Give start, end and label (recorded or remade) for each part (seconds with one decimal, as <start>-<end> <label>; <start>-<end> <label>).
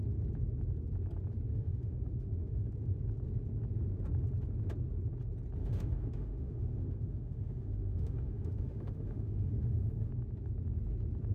0.0-1.5 recorded; 1.5-2.7 remade; 2.7-5.6 recorded; 5.6-10.1 remade; 10.1-11.3 recorded